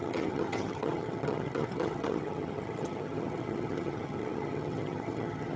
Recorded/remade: remade